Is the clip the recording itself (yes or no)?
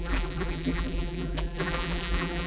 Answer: no